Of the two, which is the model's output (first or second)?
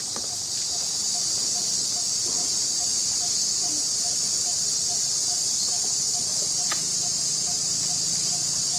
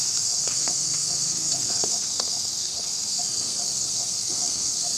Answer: second